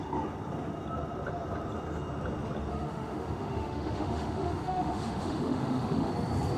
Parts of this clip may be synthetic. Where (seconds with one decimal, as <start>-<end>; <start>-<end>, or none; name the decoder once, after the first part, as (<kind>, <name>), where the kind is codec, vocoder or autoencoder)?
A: 2.7-6.1 (autoencoder, DAC-VAE)